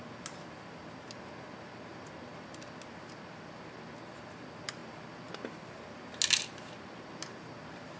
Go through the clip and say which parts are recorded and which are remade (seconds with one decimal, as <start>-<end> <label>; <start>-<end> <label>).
0.0-8.0 recorded